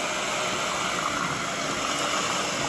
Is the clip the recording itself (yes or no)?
yes